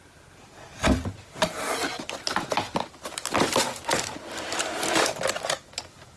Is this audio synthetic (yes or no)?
no